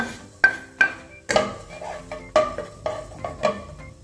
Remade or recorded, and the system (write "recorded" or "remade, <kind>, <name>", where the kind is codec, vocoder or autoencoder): recorded